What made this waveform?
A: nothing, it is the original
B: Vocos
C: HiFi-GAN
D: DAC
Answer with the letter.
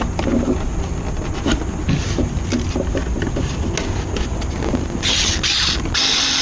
A